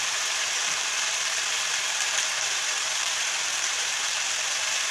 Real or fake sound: fake